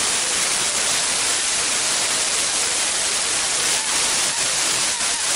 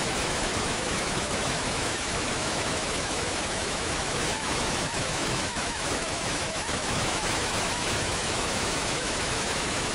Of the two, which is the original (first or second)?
first